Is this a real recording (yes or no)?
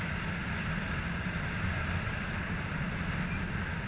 yes